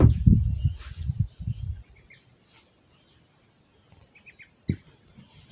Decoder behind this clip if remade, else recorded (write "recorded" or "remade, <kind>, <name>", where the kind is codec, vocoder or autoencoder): recorded